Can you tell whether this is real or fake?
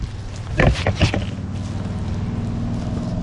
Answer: real